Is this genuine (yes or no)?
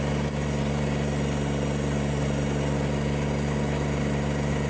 yes